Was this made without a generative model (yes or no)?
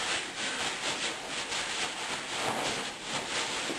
yes